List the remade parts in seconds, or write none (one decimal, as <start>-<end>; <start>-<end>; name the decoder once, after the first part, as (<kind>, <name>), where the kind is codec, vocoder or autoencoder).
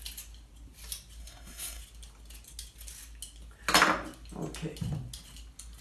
1.2-1.8 (codec, SNAC)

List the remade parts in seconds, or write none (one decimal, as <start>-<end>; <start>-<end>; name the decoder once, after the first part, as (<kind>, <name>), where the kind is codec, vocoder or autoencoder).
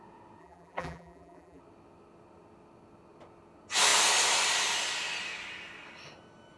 0.4-1.6 (vocoder, BigVGAN v2)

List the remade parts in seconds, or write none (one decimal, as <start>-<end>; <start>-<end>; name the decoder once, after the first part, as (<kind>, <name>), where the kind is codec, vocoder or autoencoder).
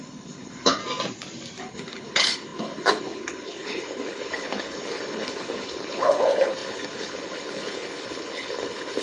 0.0-0.8 (codec, HILCodec); 1.6-9.0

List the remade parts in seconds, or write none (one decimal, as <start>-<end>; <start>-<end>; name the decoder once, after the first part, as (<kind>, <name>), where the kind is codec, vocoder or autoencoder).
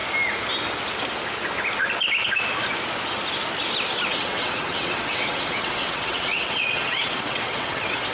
4.1-8.1 (vocoder, WaveNeXt)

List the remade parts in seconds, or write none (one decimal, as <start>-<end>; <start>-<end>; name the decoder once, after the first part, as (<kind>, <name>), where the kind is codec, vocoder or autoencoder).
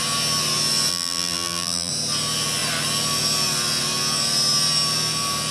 0.9-1.9 (vocoder, BigVGAN v2)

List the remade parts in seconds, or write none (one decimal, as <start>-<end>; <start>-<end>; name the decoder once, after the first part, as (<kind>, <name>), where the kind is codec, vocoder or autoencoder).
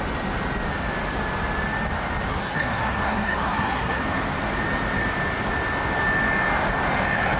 2.3-4.0 (codec, SNAC)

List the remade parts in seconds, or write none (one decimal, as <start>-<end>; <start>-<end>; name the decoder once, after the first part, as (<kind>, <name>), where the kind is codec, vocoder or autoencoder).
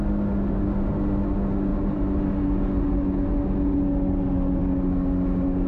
1.7-2.3 (vocoder, BigVGAN v2)